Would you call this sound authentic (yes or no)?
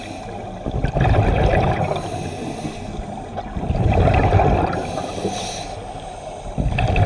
yes